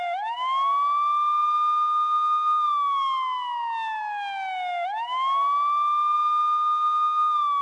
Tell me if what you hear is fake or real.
real